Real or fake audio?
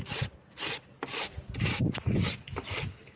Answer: real